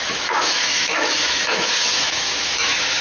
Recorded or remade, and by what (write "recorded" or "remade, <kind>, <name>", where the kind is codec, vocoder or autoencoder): remade, autoencoder, DAC-VAE